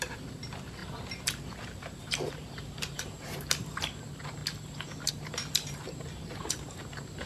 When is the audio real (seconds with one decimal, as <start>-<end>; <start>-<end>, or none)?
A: 4.4-5.1